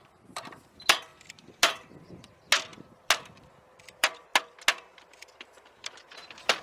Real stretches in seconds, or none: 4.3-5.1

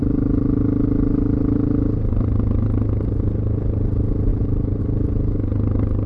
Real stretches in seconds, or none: 0.0-4.3; 4.8-6.1

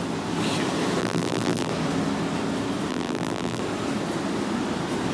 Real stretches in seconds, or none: 0.0-1.0; 1.7-2.9; 3.6-5.1

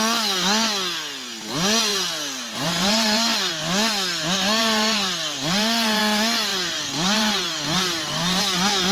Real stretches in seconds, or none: 0.0-1.9; 3.5-4.6; 6.0-6.5; 8.4-8.9

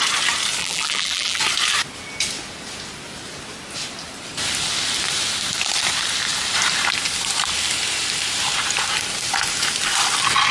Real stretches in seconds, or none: 0.0-0.6; 1.4-10.5

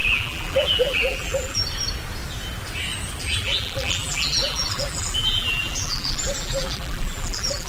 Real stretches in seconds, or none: 1.6-3.2

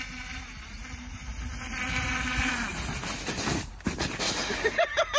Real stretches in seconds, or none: 1.3-3.7